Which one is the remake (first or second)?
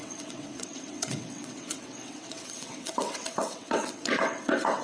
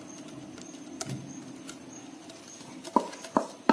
first